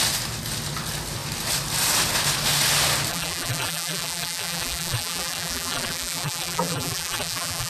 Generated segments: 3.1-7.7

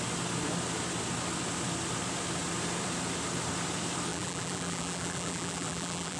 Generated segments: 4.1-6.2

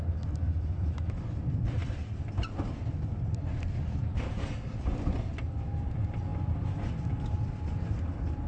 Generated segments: none

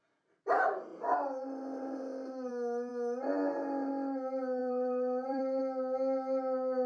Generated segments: 4.6-5.6

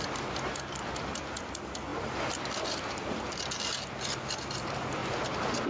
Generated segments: 0.0-1.9; 2.9-5.0

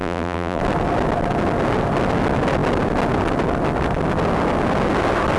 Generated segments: 0.0-0.6

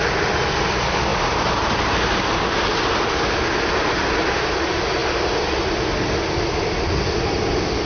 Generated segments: 1.1-2.8